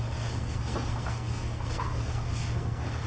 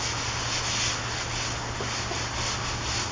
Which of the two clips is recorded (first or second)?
second